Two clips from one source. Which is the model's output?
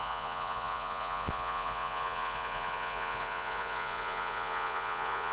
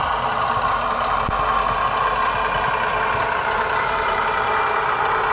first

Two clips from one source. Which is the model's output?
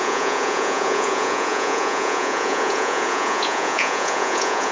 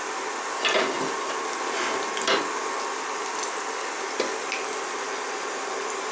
first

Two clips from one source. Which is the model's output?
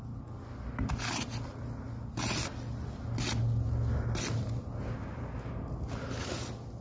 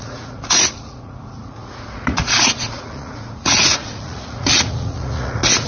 second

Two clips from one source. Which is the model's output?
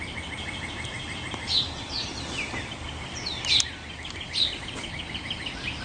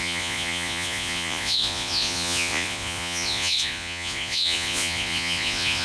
second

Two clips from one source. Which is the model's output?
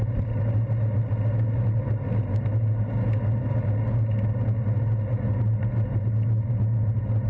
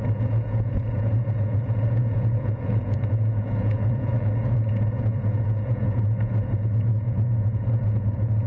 second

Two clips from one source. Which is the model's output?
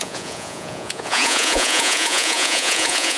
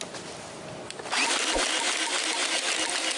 first